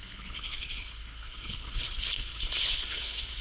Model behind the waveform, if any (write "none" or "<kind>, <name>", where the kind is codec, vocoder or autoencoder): codec, HILCodec